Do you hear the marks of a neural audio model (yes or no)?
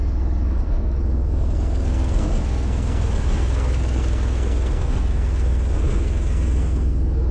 yes